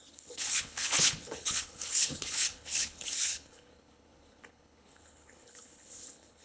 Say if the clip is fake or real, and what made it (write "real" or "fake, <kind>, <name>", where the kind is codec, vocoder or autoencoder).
fake, codec, HILCodec